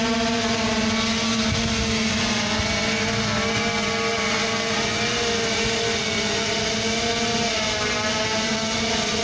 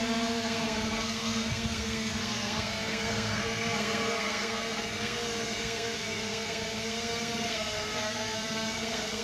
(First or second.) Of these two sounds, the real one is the first